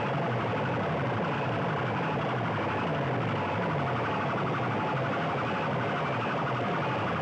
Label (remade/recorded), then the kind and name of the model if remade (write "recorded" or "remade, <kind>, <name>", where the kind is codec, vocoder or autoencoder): recorded